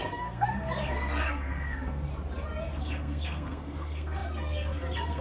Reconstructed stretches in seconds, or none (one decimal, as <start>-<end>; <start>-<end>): 0.0-2.1; 2.8-5.2